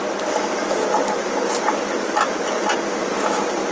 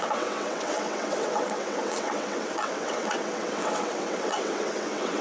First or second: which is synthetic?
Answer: second